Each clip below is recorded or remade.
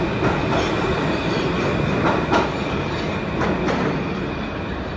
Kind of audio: recorded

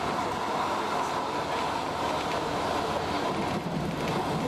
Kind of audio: recorded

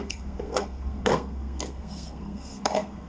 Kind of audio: remade